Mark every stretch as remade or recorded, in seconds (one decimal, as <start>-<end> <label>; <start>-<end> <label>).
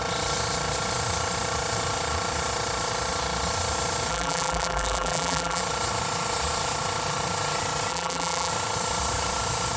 0.0-4.1 recorded; 4.1-5.6 remade; 5.6-7.9 recorded; 7.9-8.5 remade; 8.5-9.8 recorded